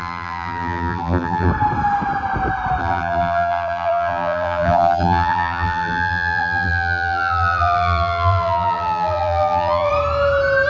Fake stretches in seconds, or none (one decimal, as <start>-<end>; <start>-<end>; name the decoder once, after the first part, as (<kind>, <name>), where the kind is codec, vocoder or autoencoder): 0.0-1.5 (vocoder, BigVGAN v2); 2.8-9.9